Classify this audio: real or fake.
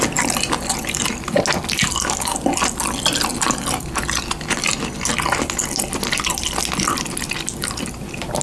real